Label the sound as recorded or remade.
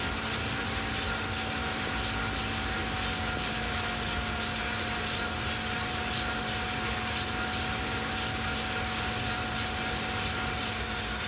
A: recorded